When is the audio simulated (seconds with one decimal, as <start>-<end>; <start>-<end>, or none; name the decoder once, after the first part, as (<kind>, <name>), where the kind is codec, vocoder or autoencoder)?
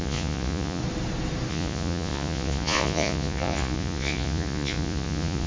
0.0-0.8 (vocoder, Vocos); 1.5-5.5